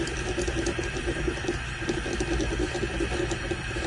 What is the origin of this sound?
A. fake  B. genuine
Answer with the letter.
B